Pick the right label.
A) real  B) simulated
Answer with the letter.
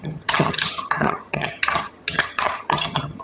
B